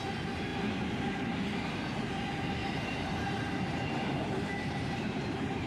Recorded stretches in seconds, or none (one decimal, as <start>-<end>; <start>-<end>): 0.0-2.6; 3.4-3.8